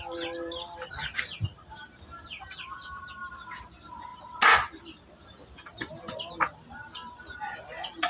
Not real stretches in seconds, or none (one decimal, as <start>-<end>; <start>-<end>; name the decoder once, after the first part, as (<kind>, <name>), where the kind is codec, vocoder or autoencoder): none